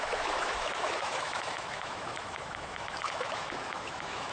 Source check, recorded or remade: remade